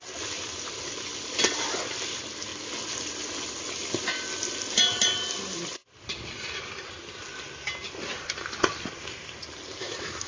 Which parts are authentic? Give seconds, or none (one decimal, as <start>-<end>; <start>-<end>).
0.0-9.8